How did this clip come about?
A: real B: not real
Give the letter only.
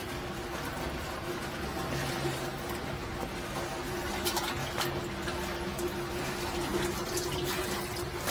A